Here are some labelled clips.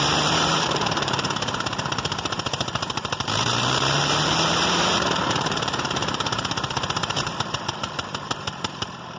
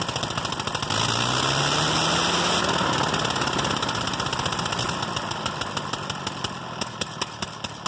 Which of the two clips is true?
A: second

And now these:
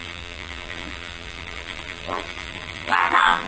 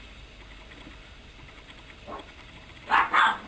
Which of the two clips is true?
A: second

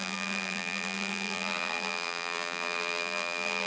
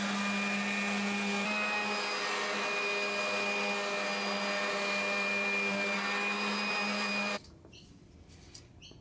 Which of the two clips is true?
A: second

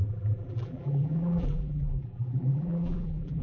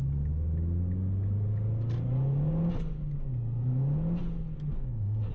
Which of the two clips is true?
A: second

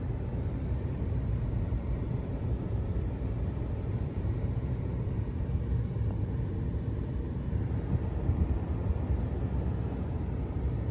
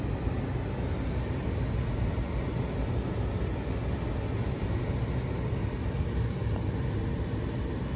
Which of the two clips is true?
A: second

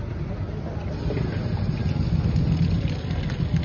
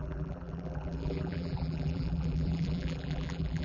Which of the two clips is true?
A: first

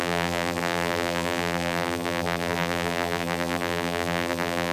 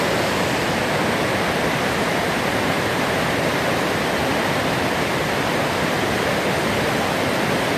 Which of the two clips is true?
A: second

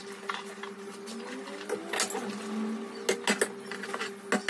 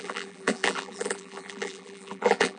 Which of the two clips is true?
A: first